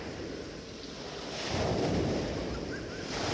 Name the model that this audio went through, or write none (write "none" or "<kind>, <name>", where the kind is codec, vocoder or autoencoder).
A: none